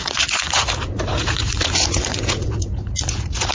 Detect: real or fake fake